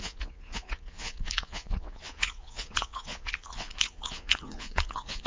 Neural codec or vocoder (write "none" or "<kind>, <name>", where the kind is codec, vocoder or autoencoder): vocoder, Vocos